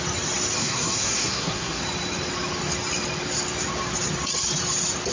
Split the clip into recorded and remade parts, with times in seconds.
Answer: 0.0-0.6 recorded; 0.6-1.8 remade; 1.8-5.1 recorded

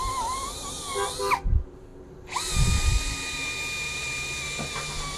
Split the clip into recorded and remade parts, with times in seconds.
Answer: 0.0-5.2 recorded